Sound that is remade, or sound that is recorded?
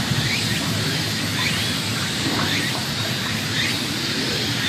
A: recorded